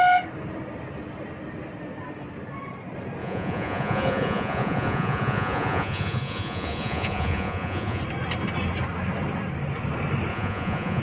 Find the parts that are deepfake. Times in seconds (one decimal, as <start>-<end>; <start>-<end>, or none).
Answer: 3.2-8.0; 10.3-11.0